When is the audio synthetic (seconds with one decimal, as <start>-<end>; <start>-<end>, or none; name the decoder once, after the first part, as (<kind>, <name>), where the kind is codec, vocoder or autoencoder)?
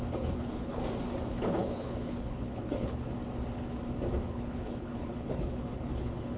0.0-0.8 (codec, HILCodec); 1.3-3.1; 4.3-6.4